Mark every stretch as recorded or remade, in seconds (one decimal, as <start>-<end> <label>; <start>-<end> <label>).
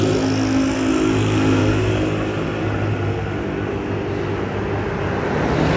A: 0.0-5.8 recorded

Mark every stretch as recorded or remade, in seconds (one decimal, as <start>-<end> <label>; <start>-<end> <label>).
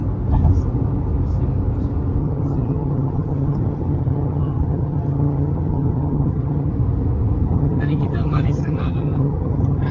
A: 0.0-2.2 recorded; 2.2-6.7 remade; 6.7-7.4 recorded; 7.4-9.9 remade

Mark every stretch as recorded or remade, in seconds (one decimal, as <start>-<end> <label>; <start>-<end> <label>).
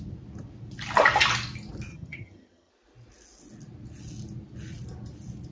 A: 0.0-1.9 recorded; 1.9-2.7 remade; 2.7-5.5 recorded